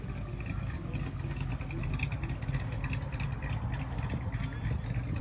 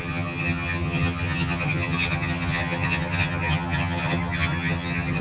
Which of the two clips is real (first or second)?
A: first